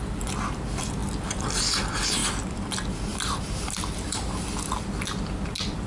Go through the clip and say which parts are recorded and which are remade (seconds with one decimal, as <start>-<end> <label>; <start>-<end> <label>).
0.0-2.2 recorded; 2.2-2.7 remade; 2.7-5.9 recorded